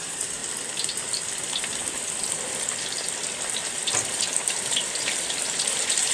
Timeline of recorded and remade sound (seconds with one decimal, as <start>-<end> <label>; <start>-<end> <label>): 0.0-0.4 remade; 0.4-4.1 recorded; 4.1-6.1 remade